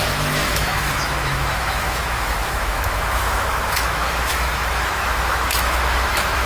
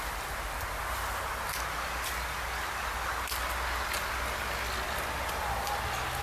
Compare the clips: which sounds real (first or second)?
second